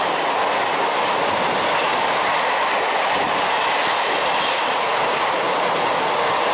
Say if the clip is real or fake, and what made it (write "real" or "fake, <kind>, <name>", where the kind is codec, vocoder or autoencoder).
real